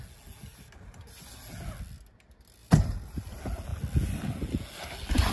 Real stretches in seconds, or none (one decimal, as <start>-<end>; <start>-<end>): 0.0-0.5; 1.3-2.6; 3.2-5.3